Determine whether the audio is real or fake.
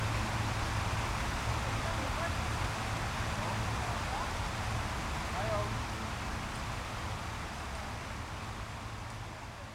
real